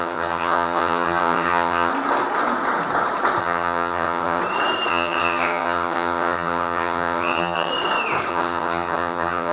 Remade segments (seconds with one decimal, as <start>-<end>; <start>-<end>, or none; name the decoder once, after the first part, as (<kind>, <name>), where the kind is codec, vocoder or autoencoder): 0.0-1.9 (vocoder, HiFi-GAN); 3.4-4.4; 4.9-7.7; 8.3-9.5